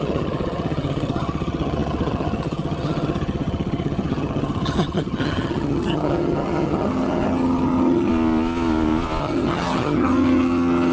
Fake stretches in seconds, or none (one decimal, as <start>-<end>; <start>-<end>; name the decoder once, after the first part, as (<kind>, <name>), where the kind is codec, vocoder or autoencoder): 0.0-8.1 (vocoder, HiFi-GAN); 9.2-10.9